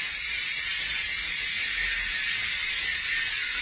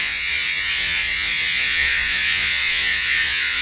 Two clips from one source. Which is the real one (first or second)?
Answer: first